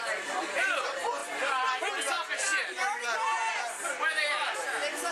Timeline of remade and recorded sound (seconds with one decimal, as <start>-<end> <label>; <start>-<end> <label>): 0.0-1.2 recorded; 1.2-1.9 remade; 1.9-5.1 recorded